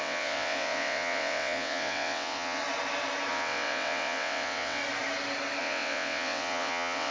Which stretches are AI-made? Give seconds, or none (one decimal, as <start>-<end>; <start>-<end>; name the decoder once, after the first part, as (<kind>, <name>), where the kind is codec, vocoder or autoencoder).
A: 0.0-2.6 (vocoder, WaveNeXt); 3.3-4.8; 5.6-7.1